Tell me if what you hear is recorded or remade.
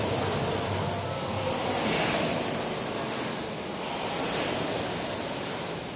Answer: recorded